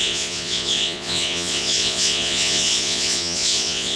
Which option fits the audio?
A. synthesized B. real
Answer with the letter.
A